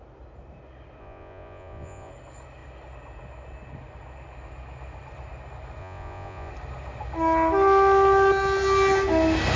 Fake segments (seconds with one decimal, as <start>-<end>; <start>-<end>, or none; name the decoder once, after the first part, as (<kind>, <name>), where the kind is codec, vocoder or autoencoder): 1.0-2.1 (vocoder, Vocos); 5.8-6.5